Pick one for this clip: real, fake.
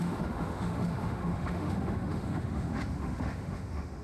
fake